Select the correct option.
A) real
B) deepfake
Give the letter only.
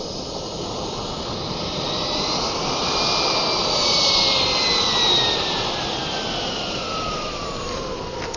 A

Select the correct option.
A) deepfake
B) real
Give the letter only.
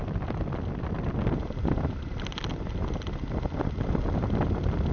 B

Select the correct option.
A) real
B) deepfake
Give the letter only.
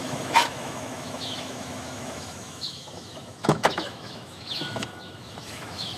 B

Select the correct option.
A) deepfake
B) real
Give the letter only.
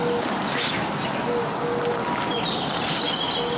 B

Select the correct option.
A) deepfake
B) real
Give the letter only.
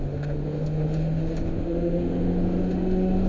A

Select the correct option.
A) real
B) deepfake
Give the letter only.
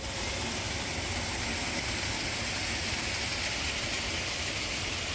A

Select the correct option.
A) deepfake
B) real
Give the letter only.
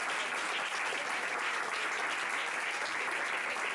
B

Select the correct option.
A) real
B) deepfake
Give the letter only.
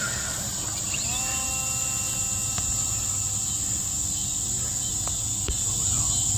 A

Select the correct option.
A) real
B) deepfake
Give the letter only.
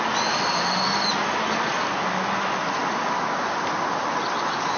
A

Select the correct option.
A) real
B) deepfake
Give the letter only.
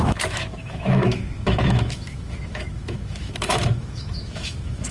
B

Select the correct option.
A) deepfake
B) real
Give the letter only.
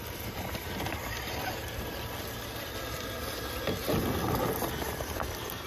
B